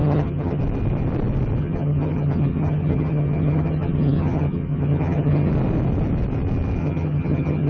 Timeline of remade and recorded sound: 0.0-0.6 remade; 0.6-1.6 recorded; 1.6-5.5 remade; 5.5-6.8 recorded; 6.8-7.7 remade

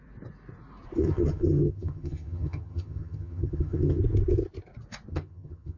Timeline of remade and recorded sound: 0.0-1.0 recorded; 1.0-4.0 remade; 4.0-5.1 recorded; 5.1-5.8 remade

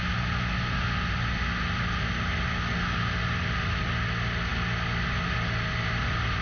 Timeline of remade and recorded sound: 0.0-6.4 recorded